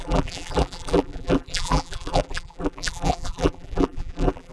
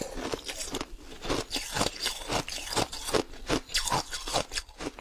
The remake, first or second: first